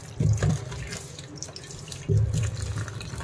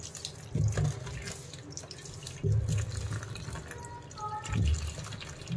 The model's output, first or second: first